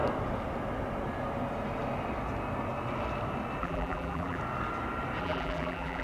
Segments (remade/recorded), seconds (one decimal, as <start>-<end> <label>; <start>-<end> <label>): 0.0-3.6 recorded; 3.6-4.4 remade; 4.4-5.2 recorded; 5.2-6.0 remade